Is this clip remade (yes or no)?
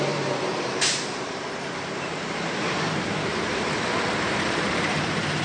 yes